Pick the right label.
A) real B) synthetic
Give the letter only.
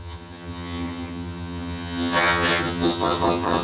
B